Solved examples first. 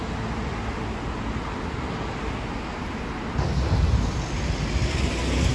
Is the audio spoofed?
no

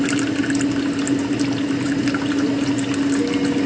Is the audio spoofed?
no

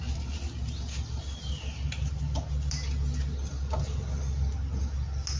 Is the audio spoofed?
no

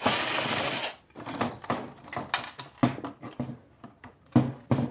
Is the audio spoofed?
no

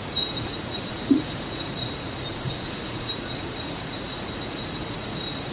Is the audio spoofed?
yes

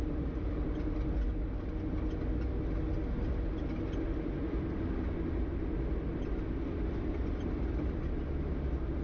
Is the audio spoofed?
no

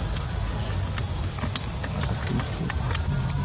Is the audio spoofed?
no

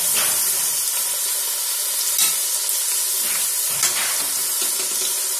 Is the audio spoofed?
no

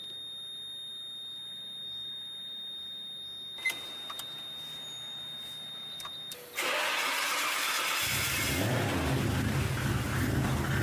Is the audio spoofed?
no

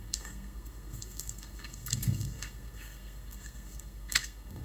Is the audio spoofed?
yes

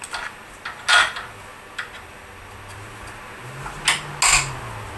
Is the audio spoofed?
no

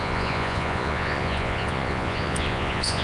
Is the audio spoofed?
yes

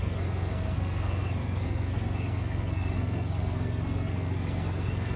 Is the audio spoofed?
yes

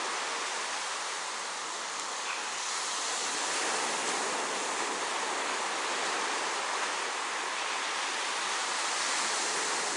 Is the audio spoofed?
no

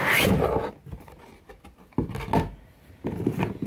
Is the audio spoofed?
no